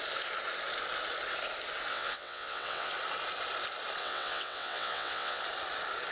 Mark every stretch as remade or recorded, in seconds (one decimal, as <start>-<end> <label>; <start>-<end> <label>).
0.0-1.9 recorded; 1.9-2.9 remade; 2.9-4.0 recorded; 4.0-5.4 remade; 5.4-6.1 recorded